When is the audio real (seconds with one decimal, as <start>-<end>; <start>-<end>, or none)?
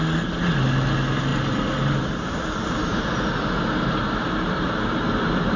0.0-5.6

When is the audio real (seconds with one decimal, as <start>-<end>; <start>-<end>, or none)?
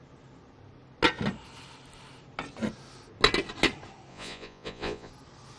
0.0-4.1; 5.1-5.6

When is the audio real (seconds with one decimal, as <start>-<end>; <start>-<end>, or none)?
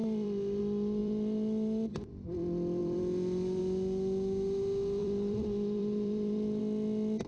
0.6-1.0; 2.1-2.8; 3.6-5.0; 6.6-7.3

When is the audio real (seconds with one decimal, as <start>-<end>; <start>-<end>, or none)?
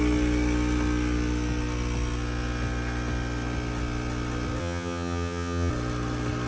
0.0-4.6; 5.7-6.5